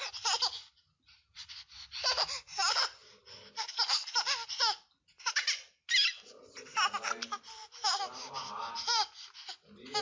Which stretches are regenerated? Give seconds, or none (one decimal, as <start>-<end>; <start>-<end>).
none

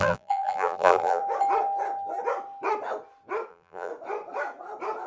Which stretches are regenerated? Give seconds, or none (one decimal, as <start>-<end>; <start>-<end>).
0.0-1.2; 3.5-3.9